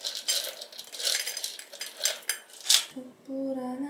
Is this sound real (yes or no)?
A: yes